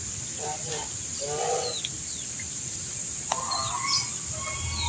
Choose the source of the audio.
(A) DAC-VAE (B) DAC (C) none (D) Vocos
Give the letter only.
C